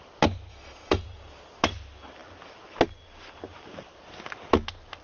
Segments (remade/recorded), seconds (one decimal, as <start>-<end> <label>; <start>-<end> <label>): 0.0-0.5 recorded; 0.5-1.0 remade; 1.0-5.0 recorded